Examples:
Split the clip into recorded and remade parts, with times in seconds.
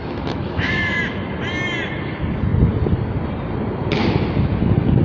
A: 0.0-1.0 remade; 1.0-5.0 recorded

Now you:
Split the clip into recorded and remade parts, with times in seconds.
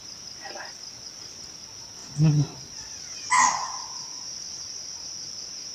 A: 0.0-5.7 recorded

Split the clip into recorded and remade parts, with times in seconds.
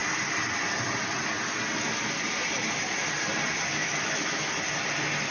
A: 0.0-3.8 recorded; 3.8-4.5 remade; 4.5-5.3 recorded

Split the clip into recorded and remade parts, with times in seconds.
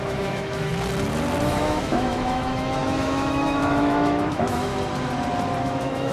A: 0.0-0.7 remade; 0.7-1.6 recorded; 1.6-4.7 remade; 4.7-5.6 recorded; 5.6-6.1 remade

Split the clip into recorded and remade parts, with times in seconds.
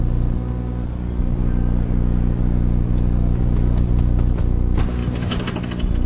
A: 0.0-6.1 recorded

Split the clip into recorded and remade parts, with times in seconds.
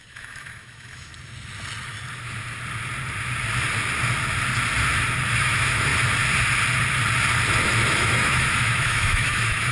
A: 0.0-1.1 remade; 1.1-5.4 recorded; 5.4-5.9 remade; 5.9-7.9 recorded; 7.9-9.7 remade